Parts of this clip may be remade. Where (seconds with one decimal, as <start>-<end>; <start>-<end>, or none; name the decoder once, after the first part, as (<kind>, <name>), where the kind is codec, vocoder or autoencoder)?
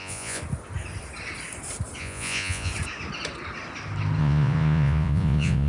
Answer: 0.0-0.4 (vocoder, Vocos); 2.0-2.7; 4.2-5.7